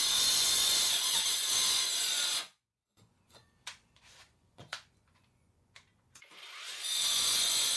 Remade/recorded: remade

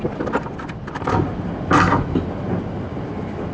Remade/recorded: recorded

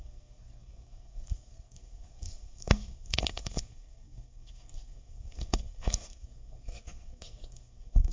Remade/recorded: remade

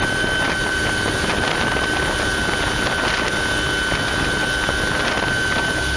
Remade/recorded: recorded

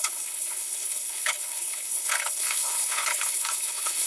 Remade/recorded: remade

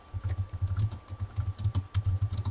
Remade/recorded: recorded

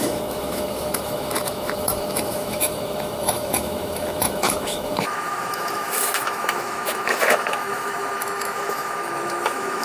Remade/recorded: remade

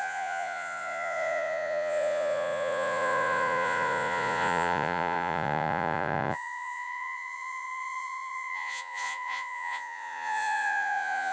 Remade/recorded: remade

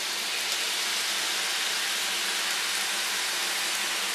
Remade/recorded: recorded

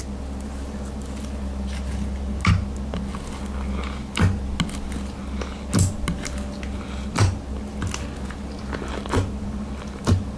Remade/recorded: recorded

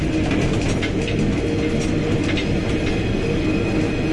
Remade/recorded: recorded